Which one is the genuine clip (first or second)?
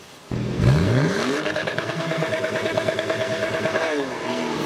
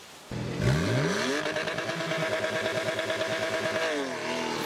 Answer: second